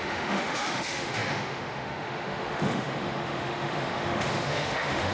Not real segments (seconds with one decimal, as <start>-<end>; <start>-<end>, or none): 0.0-5.1